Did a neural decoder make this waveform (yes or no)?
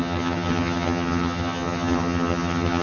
yes